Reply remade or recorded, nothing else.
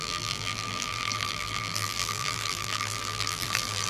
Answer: remade